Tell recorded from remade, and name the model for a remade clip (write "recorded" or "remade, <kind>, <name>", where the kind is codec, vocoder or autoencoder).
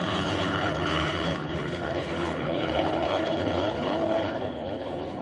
remade, codec, HILCodec